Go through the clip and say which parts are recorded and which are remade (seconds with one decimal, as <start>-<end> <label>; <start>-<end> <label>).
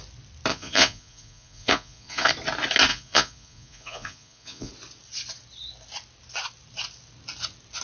0.0-0.5 recorded; 0.5-2.3 remade; 2.3-2.9 recorded; 2.9-4.7 remade; 4.7-7.8 recorded